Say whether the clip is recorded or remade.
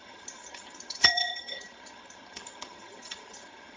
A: remade